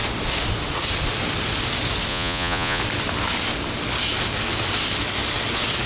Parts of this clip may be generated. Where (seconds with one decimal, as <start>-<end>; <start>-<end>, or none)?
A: 2.1-2.8